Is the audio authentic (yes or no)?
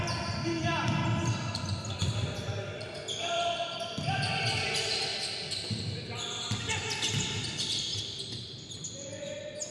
yes